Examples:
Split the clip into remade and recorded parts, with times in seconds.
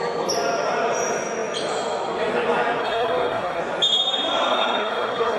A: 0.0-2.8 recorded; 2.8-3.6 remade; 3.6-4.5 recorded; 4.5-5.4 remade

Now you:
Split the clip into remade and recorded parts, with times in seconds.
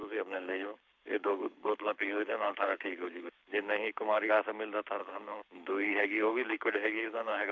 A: 0.0-4.3 remade; 4.3-5.0 recorded; 5.0-7.5 remade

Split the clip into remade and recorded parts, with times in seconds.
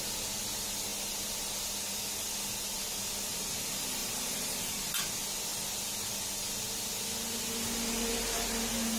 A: 0.0-4.0 recorded; 4.0-4.9 remade; 4.9-9.0 recorded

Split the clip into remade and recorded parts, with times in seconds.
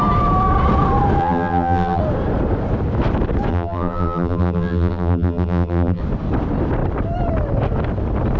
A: 0.0-1.2 recorded; 1.2-2.0 remade; 2.0-3.5 recorded; 3.5-6.0 remade; 6.0-8.4 recorded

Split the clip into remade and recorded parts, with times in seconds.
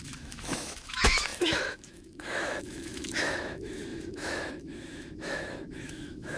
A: 0.0-6.4 remade